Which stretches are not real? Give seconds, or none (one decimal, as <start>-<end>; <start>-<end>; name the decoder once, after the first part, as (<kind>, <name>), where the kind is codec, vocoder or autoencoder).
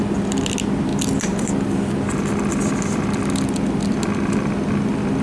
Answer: none